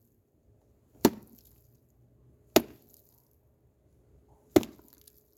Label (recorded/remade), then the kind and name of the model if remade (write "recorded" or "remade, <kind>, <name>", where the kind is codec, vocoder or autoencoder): recorded